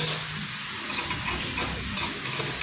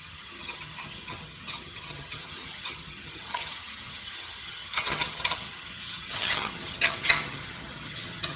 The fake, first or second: second